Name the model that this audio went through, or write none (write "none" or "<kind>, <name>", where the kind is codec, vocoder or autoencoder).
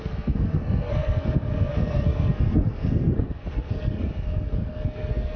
codec, SNAC